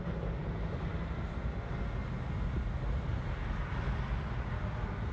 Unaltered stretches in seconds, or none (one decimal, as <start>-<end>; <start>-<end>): 0.0-5.1